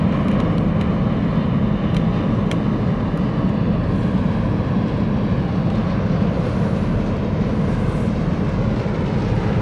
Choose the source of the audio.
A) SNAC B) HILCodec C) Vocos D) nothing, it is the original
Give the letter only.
D